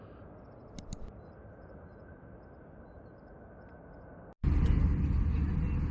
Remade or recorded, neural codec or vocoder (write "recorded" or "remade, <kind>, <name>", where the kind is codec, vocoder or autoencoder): recorded